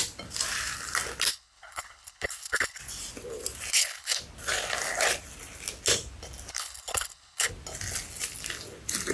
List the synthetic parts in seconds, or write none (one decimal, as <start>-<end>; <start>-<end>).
1.3-2.8; 3.7-4.2; 6.5-7.5